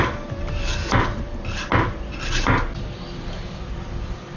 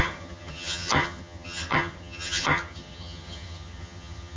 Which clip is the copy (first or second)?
second